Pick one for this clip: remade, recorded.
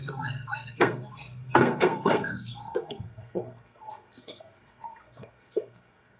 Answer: remade